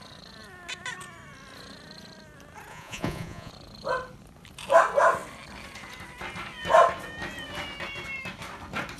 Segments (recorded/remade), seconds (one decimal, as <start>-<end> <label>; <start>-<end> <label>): 0.0-2.7 recorded; 2.7-3.5 remade; 3.5-9.0 recorded